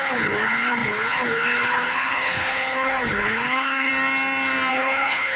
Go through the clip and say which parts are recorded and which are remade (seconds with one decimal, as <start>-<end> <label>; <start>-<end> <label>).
0.0-3.9 remade; 3.9-4.7 recorded; 4.7-5.4 remade